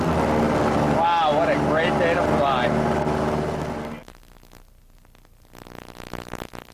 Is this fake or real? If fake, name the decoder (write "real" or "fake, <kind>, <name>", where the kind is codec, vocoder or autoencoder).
real